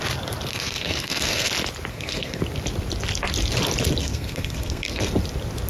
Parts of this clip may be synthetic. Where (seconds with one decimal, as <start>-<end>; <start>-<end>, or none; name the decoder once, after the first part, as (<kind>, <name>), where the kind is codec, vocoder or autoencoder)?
0.5-1.5 (codec, SNAC); 1.9-2.4; 4.0-5.1